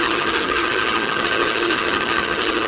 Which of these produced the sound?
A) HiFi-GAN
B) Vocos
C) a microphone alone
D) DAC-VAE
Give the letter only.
A